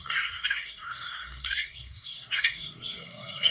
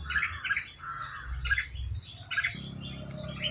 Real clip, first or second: second